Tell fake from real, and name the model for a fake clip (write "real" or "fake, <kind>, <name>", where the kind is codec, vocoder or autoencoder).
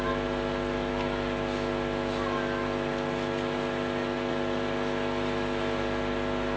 real